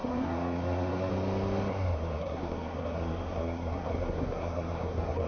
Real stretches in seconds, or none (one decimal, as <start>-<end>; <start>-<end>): 1.1-1.7